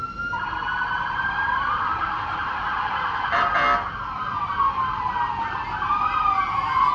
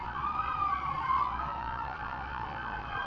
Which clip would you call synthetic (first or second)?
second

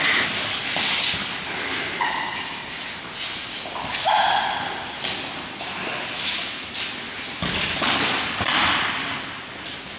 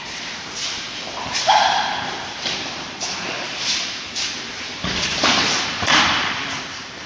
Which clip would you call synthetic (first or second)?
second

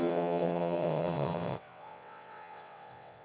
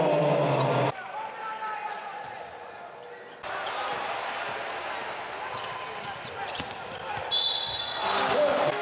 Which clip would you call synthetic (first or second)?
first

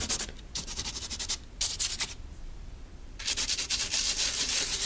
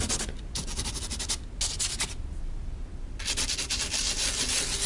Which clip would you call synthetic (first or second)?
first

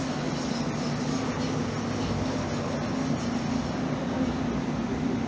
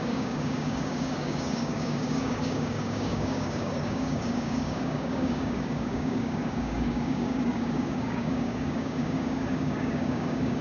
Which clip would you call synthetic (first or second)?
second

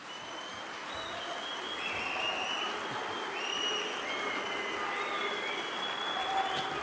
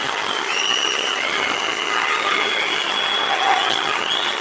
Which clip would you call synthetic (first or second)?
second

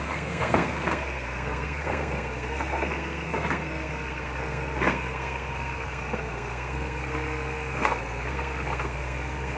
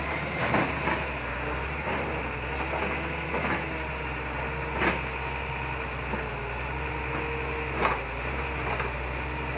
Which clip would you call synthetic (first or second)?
first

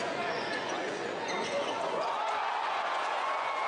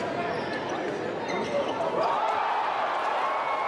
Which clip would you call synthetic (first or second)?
first